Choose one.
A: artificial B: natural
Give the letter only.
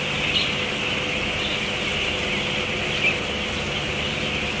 B